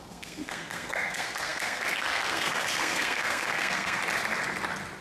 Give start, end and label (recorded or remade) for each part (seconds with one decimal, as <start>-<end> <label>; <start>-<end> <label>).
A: 0.0-4.0 remade; 4.0-5.0 recorded